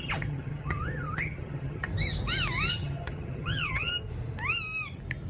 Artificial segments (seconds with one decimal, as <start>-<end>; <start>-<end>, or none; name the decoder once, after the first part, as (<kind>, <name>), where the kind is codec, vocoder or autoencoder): 0.0-1.9 (vocoder, HiFi-GAN); 2.7-3.9